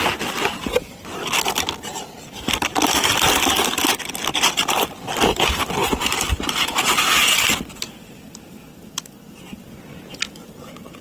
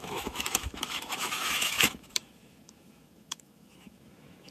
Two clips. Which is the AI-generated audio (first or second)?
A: second